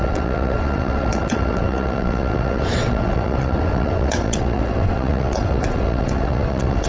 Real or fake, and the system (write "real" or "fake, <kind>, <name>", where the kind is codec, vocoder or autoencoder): fake, vocoder, WaveNeXt